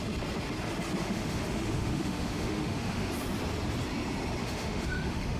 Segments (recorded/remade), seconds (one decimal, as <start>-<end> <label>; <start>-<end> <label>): 0.0-1.0 recorded; 1.0-3.1 remade; 3.1-4.4 recorded; 4.4-5.4 remade